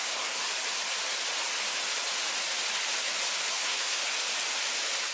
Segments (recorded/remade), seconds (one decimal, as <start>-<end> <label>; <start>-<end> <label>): 0.0-0.4 remade; 0.4-3.5 recorded; 3.5-4.0 remade; 4.0-5.1 recorded